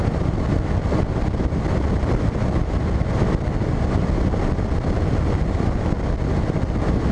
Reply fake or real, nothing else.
real